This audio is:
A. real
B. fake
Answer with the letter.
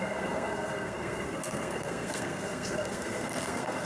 B